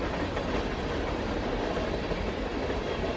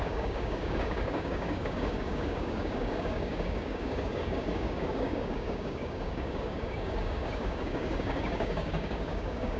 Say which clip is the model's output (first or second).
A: second